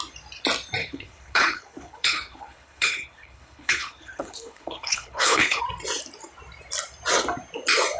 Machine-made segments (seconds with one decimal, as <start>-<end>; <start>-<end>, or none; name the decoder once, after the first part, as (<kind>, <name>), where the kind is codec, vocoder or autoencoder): 0.8-5.6 (codec, HILCodec)